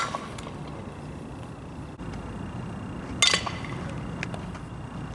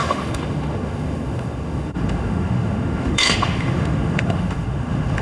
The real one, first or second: first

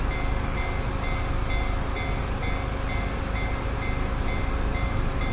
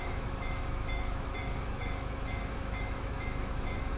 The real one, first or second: first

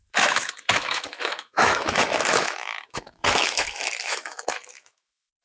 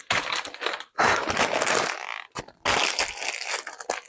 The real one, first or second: second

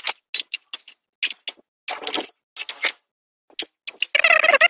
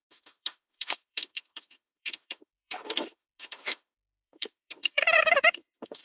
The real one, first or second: first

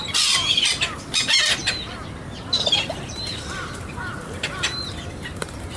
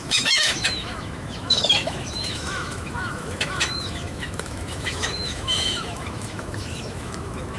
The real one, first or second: first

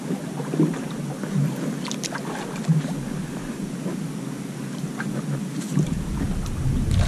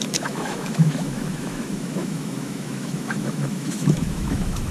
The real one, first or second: first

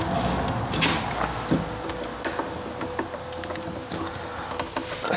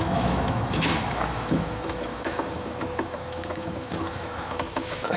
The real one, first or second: first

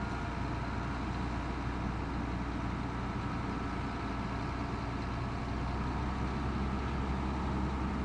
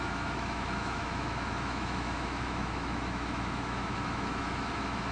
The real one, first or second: first